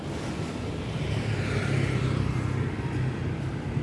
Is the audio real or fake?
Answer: fake